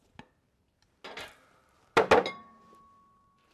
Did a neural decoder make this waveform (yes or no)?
no